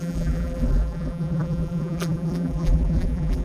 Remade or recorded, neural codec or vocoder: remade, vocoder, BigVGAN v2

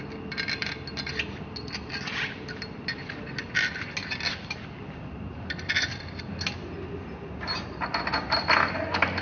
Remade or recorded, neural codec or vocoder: recorded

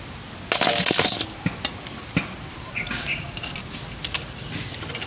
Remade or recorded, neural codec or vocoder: recorded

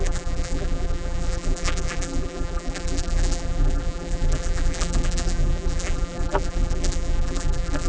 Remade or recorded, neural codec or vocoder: remade, vocoder, BigVGAN v2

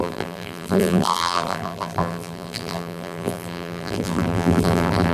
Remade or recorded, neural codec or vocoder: remade, vocoder, BigVGAN v2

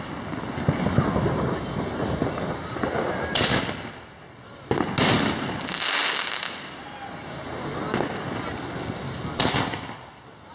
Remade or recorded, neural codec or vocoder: recorded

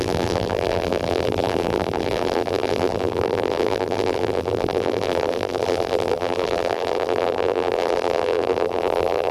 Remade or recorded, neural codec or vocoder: remade, vocoder, BigVGAN v2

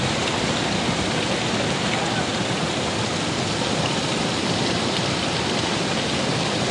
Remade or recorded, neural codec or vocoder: recorded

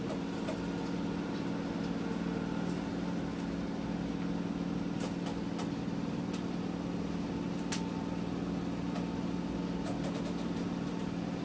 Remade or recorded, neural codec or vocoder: recorded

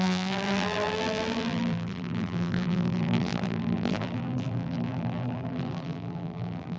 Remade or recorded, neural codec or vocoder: remade, vocoder, BigVGAN v2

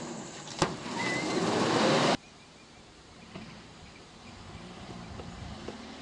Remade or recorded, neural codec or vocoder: remade, vocoder, BigVGAN v2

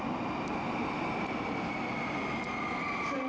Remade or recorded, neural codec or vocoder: recorded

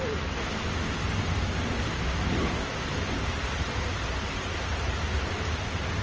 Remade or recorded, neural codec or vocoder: recorded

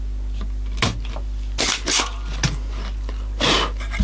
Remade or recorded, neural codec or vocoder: recorded